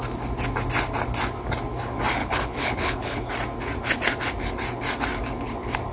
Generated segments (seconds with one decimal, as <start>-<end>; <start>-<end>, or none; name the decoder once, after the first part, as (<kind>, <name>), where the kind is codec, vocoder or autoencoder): 2.2-3.3 (codec, HILCodec)